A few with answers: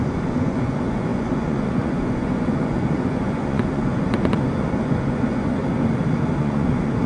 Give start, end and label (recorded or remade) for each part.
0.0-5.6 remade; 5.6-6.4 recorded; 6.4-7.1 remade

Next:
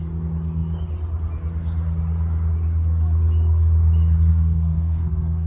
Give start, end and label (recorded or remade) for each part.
0.0-4.3 recorded; 4.3-5.5 remade

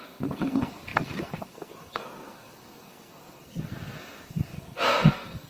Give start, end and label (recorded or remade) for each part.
0.0-5.5 remade

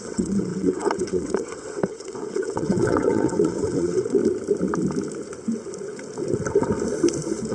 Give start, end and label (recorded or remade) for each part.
0.0-4.2 remade; 4.2-7.5 recorded